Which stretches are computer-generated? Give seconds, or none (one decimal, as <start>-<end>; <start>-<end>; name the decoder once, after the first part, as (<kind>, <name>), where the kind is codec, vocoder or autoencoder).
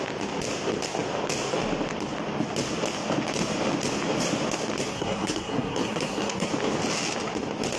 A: 4.9-6.5 (codec, SNAC)